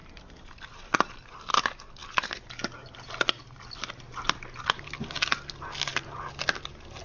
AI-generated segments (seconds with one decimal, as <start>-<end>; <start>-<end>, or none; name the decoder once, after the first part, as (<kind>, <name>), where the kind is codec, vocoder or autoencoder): none